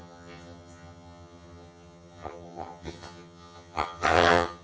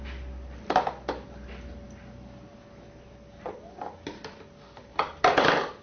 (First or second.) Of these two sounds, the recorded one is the second